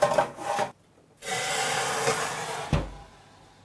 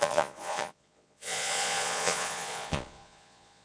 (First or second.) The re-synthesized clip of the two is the second